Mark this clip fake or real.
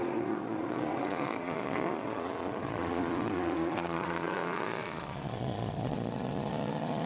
fake